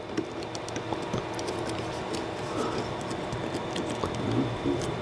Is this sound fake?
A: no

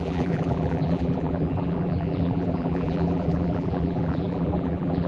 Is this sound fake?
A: yes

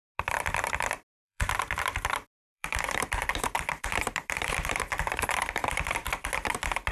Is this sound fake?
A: yes